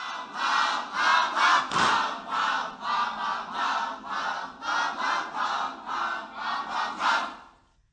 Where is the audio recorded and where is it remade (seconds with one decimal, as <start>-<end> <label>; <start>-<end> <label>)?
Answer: 0.0-7.9 recorded